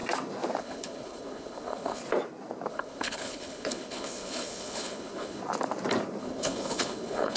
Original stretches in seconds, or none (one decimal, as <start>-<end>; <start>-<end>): 0.0-0.6; 2.0-2.7; 5.4-6.2